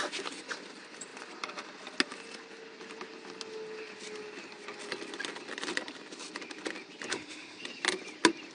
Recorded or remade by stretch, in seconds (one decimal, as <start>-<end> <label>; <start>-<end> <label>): 0.0-7.1 recorded; 7.1-7.6 remade; 7.6-8.5 recorded